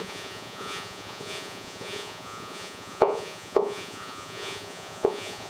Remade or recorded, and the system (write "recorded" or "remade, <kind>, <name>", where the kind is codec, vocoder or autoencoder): remade, vocoder, Vocos